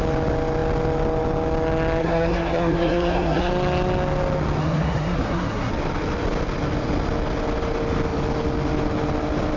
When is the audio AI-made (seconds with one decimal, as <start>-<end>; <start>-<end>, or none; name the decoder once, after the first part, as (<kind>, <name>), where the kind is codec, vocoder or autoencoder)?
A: 2.0-3.5 (codec, SNAC); 4.6-5.7